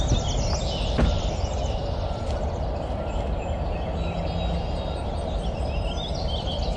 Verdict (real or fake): real